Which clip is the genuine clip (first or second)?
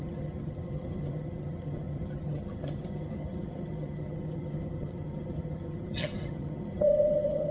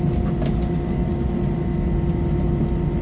second